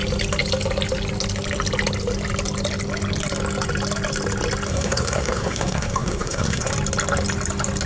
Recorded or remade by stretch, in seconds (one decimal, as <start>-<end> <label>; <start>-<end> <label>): 0.0-4.7 recorded; 4.7-6.7 remade; 6.7-7.9 recorded